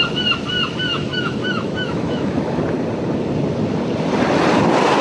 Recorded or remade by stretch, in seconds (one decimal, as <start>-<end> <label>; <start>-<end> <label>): 0.0-0.9 recorded; 0.9-2.6 remade; 2.6-5.0 recorded